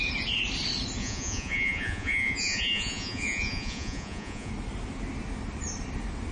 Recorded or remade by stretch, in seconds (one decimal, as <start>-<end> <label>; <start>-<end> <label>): 0.0-1.0 recorded; 1.0-4.5 remade; 4.5-6.3 recorded